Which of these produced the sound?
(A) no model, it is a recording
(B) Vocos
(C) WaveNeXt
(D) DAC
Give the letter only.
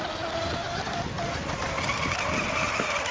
A